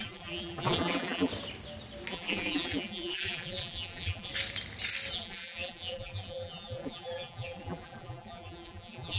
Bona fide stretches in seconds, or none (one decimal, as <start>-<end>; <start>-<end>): 1.3-2.1; 4.3-5.1